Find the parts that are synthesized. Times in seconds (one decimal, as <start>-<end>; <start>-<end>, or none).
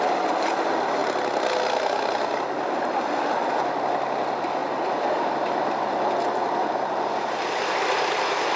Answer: none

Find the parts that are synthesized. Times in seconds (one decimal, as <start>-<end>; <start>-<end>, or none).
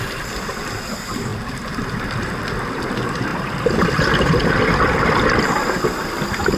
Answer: 0.0-6.6